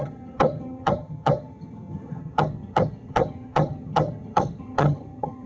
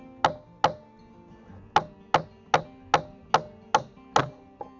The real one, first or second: second